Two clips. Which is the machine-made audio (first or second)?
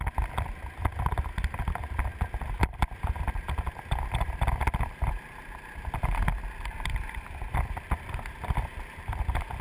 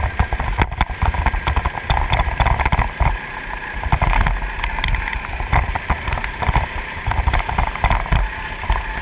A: first